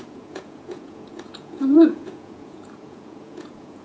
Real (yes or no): no